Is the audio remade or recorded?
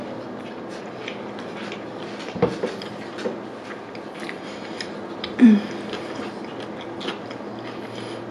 recorded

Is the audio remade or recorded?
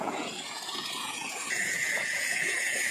remade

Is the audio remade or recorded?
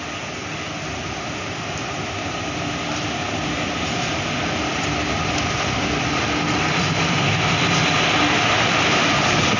recorded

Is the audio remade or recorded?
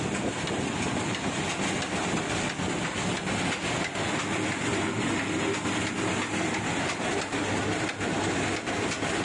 recorded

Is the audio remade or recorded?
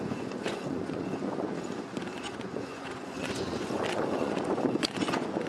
remade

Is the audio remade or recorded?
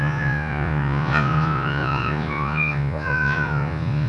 remade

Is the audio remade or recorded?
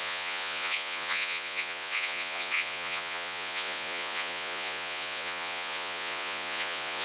remade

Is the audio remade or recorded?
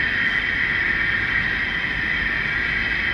recorded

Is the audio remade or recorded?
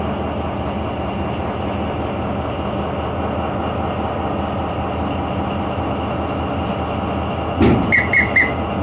recorded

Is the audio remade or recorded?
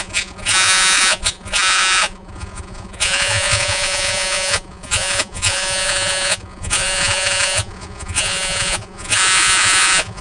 remade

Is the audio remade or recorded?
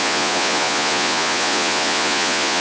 remade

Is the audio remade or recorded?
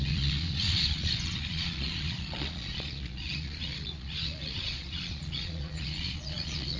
remade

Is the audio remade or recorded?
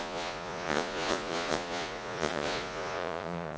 remade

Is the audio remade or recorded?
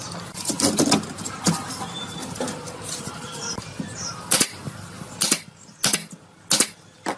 recorded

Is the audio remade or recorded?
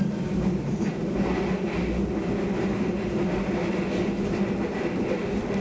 recorded